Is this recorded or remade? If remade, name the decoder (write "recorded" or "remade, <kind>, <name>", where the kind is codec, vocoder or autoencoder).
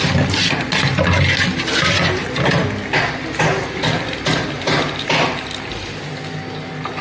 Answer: recorded